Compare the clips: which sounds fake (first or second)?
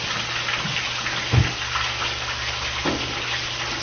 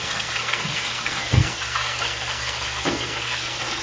second